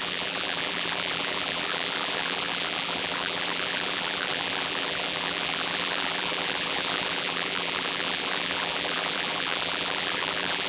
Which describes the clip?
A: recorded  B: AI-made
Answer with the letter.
B